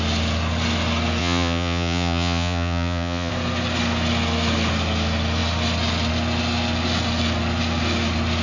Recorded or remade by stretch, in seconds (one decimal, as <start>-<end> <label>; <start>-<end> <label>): 0.0-1.2 recorded; 1.2-3.3 remade; 3.3-8.4 recorded